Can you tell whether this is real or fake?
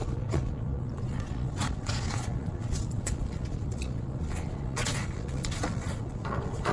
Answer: fake